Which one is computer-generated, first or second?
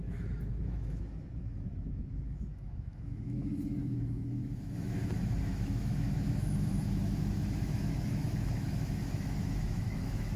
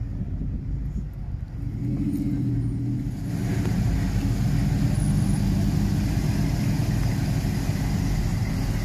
first